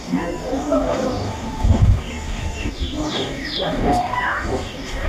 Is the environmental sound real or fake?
fake